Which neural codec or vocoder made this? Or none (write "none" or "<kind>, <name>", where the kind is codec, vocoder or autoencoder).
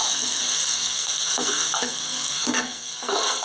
codec, SNAC